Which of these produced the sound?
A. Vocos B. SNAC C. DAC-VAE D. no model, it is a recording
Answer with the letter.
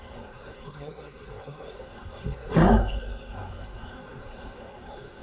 B